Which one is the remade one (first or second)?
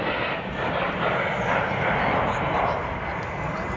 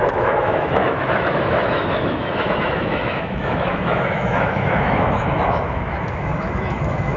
second